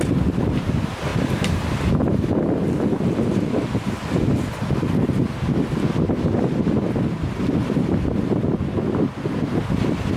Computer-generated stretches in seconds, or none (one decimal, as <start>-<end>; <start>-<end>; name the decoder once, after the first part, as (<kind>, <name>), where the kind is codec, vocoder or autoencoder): 1.1-4.6 (vocoder, BigVGAN v2)